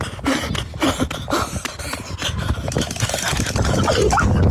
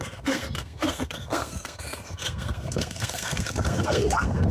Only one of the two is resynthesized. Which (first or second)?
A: second